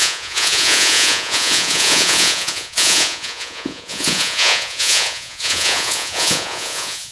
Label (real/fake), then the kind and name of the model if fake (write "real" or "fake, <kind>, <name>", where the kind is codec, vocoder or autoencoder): fake, vocoder, Vocos